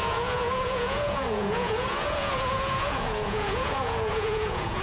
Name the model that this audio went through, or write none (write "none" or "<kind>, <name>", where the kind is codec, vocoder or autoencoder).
vocoder, Vocos